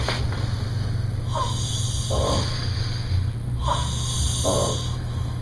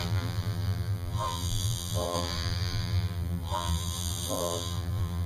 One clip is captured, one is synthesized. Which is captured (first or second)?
first